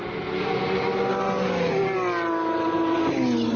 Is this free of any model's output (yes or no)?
yes